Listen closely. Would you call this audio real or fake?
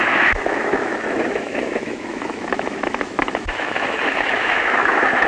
fake